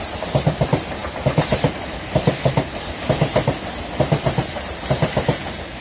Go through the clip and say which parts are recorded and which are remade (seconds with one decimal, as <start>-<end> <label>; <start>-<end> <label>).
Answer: 0.0-5.8 recorded